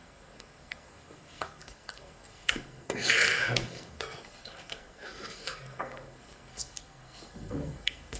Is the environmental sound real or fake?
fake